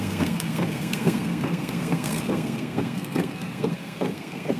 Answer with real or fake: fake